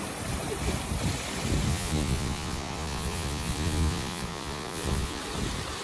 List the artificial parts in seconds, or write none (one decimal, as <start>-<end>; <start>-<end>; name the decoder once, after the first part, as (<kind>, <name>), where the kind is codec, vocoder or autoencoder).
1.7-5.2 (vocoder, Vocos)